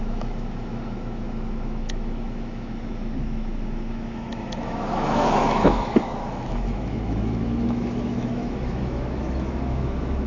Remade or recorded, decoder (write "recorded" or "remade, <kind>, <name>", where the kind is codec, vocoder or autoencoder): remade, autoencoder, DAC-VAE